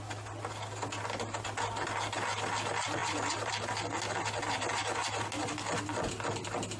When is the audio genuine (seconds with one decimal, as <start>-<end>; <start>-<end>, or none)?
0.0-3.0; 3.5-6.8